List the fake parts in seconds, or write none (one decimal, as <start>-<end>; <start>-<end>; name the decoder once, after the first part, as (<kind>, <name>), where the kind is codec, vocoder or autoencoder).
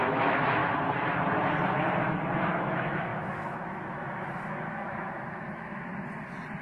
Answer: 0.0-0.6 (autoencoder, DAC-VAE); 2.5-5.9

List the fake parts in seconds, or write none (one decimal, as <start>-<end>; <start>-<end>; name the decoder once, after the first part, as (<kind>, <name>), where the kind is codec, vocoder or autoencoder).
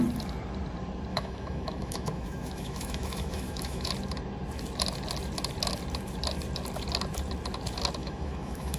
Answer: 1.1-3.9 (autoencoder, DAC-VAE); 8.0-8.8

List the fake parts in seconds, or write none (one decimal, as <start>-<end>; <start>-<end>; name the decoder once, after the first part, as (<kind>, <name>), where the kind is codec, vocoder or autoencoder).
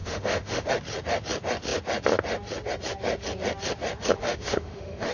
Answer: 0.0-0.7 (autoencoder, DAC-VAE); 4.2-5.1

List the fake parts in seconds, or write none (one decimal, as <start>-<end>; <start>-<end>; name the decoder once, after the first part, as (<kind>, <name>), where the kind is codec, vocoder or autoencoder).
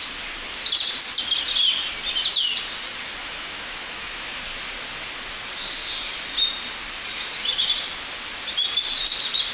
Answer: 3.2-4.4 (autoencoder, DAC-VAE)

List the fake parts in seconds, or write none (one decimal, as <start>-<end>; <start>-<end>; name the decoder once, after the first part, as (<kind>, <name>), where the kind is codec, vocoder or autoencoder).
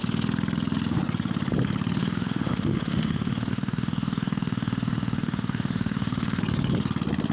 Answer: 2.0-6.4 (autoencoder, DAC-VAE)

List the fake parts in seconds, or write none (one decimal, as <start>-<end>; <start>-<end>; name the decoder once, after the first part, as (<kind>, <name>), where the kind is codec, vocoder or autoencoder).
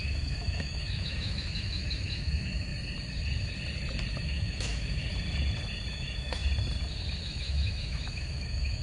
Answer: 0.0-2.7 (autoencoder, DAC-VAE); 4.1-5.1; 5.9-6.4; 7.2-8.8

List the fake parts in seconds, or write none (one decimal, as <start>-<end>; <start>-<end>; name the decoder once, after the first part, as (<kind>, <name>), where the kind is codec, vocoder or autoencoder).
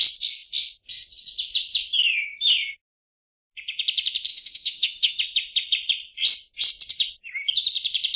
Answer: 4.3-5.2 (autoencoder, DAC-VAE)